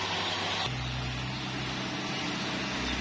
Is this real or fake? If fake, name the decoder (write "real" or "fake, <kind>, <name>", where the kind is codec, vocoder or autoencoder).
real